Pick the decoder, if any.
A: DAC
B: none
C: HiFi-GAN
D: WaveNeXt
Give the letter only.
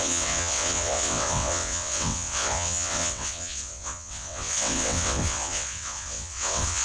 D